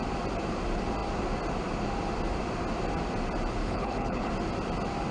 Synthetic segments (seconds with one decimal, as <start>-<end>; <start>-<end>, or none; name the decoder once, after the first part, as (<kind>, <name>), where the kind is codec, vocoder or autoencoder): 3.6-4.3 (codec, HILCodec)